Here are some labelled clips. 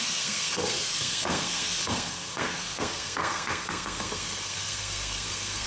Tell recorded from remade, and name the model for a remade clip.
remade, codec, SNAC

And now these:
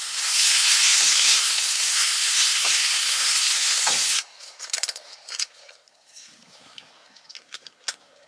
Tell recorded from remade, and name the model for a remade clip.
remade, codec, SNAC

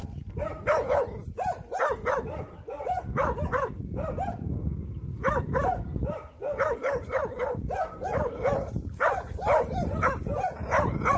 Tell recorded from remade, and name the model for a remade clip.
recorded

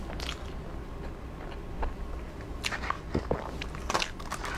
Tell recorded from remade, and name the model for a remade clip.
recorded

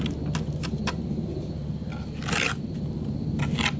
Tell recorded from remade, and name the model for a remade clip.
recorded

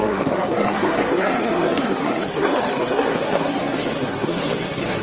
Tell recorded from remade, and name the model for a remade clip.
remade, codec, SNAC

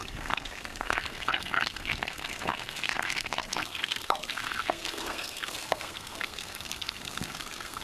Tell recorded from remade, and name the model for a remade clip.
remade, codec, SNAC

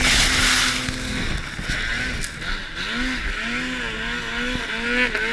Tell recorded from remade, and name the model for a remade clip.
recorded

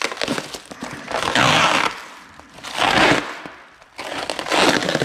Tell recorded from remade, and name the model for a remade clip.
recorded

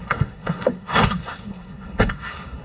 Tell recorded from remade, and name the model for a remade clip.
remade, codec, SNAC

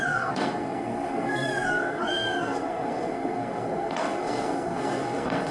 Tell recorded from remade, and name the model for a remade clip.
remade, codec, SNAC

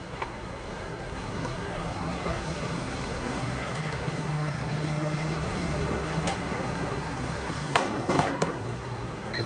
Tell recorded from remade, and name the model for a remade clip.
remade, codec, SNAC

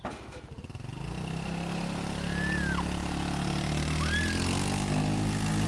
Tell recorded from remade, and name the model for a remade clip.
recorded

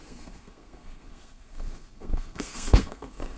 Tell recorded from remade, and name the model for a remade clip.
remade, codec, SNAC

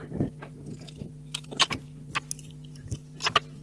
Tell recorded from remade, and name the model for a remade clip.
recorded